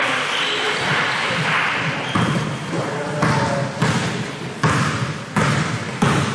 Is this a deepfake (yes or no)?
no